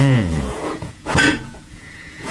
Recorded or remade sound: remade